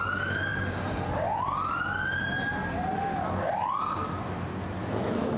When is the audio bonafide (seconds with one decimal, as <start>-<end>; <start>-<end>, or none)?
0.0-4.8